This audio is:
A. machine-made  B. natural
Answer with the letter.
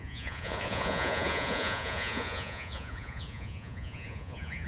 A